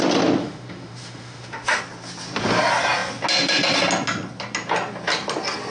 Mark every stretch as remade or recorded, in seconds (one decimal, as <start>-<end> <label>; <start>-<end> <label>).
0.0-0.4 recorded; 0.4-1.8 remade; 1.8-5.7 recorded